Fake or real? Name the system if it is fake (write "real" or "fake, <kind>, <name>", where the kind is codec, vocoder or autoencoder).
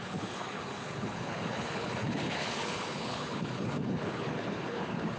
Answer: fake, codec, HILCodec